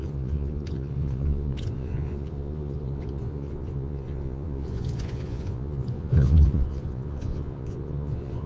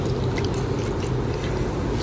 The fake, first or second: first